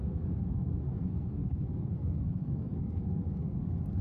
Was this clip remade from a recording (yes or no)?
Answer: yes